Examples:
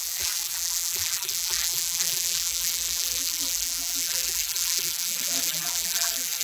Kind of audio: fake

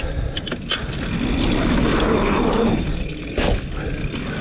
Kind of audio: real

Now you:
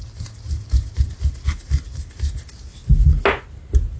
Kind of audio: real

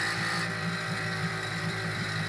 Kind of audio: fake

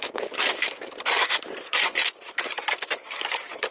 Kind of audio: fake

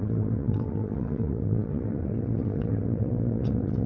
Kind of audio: fake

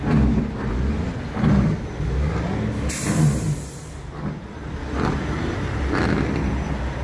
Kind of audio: real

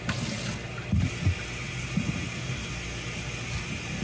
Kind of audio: real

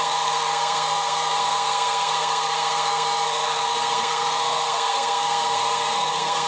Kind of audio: fake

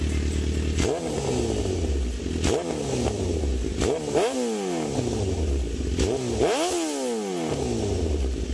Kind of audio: real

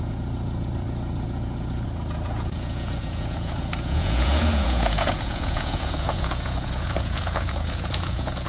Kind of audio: fake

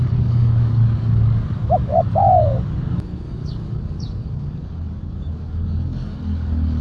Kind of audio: fake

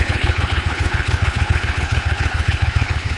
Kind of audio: fake